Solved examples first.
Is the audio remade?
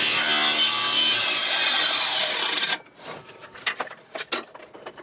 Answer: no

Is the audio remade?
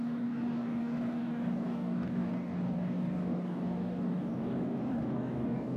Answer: yes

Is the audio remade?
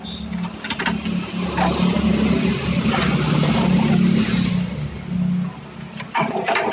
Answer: no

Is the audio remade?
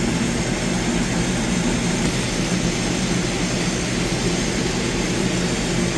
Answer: no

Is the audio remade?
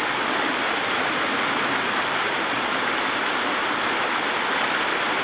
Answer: no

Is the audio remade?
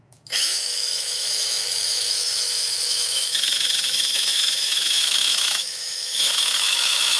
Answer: yes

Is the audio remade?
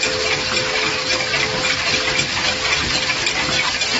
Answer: no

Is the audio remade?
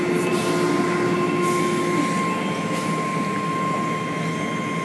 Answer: no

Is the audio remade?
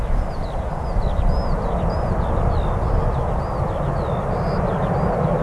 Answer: no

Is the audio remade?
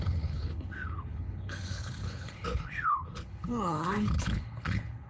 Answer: yes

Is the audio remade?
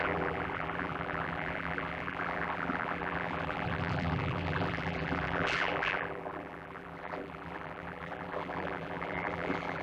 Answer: yes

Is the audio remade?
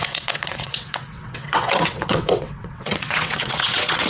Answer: yes